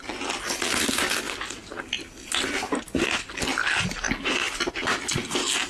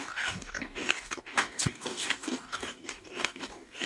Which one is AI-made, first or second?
second